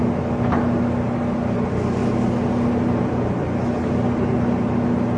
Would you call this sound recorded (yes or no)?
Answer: yes